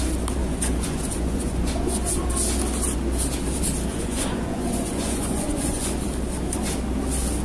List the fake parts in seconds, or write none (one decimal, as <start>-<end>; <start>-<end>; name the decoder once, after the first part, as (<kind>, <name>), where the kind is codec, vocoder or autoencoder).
0.4-2.3 (vocoder, Vocos); 3.9-5.9